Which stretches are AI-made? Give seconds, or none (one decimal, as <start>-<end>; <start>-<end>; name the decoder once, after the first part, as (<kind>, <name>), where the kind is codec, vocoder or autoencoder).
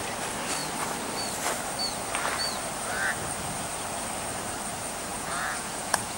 5.1-6.2 (vocoder, Vocos)